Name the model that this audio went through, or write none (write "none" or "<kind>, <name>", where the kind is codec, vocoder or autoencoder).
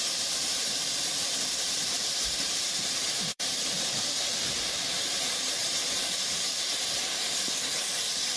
vocoder, BigVGAN v2